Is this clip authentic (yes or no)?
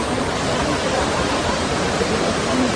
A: no